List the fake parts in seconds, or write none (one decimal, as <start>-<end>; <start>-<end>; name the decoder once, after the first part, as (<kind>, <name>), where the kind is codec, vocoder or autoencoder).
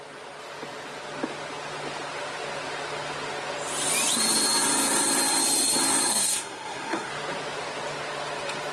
6.1-7.1 (codec, SNAC)